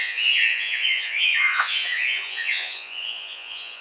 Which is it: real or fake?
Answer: fake